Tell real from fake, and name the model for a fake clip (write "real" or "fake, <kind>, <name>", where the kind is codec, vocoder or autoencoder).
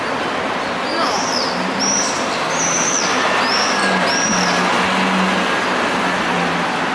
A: real